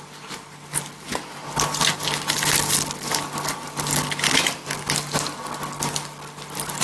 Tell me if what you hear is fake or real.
real